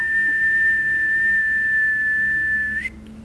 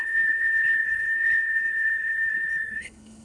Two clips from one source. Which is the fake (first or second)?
second